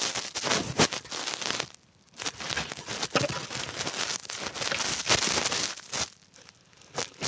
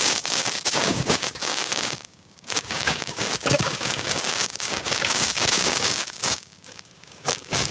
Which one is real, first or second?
first